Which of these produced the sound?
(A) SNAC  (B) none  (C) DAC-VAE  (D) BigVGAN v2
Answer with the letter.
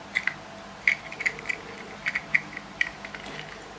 B